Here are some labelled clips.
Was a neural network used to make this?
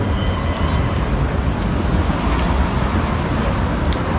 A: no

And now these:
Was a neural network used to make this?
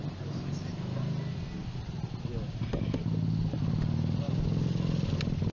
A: no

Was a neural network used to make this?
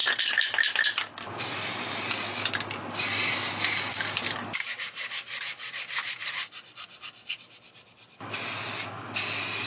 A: no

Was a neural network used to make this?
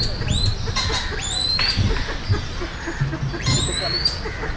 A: no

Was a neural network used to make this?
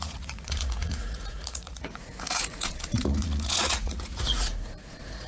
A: yes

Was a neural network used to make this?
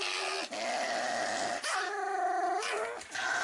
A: no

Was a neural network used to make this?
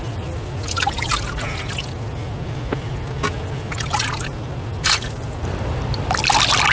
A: no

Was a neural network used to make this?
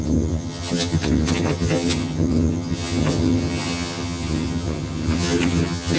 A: yes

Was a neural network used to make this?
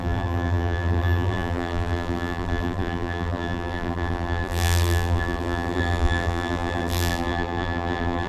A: yes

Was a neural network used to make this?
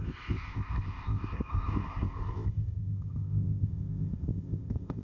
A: yes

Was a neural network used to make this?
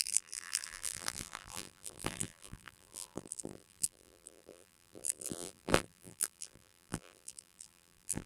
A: yes